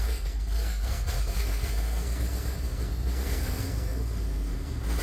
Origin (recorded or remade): remade